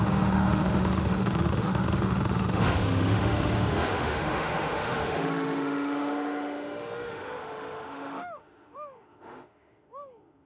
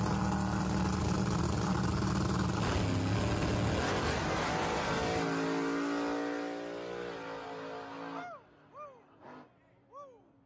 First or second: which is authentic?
second